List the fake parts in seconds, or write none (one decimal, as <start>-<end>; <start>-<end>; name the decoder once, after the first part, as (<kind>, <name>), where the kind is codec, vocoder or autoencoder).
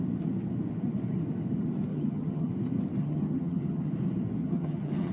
1.9-2.5 (vocoder, HiFi-GAN); 3.0-3.9; 4.4-5.1